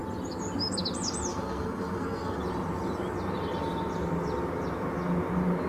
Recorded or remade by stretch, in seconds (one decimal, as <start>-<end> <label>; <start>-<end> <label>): 0.0-1.3 recorded; 1.3-2.4 remade; 2.4-5.7 recorded